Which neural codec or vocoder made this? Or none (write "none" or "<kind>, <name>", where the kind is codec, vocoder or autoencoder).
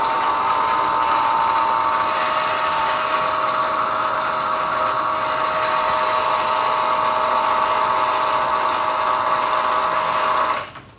none